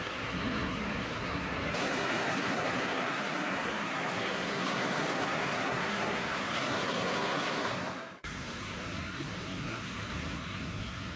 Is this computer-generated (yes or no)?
yes